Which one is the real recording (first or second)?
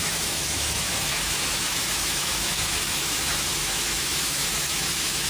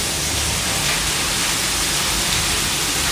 second